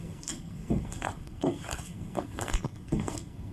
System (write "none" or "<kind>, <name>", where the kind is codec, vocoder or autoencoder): codec, SNAC